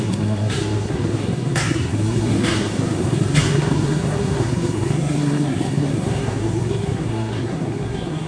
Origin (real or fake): fake